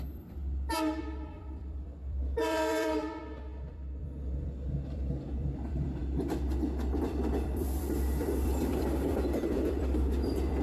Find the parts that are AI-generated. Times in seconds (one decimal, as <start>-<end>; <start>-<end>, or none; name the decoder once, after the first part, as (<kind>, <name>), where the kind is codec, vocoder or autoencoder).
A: 0.0-0.4 (vocoder, BigVGAN v2); 1.0-3.2; 3.7-6.0; 7.0-10.6